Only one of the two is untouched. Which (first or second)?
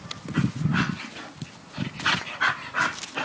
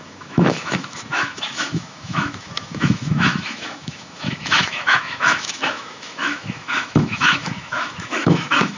first